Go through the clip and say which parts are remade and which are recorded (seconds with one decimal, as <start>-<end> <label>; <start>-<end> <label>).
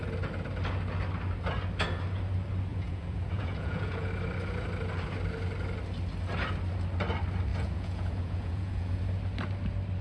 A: 0.0-2.7 recorded; 2.7-4.1 remade; 4.1-7.5 recorded; 7.5-9.0 remade; 9.0-10.0 recorded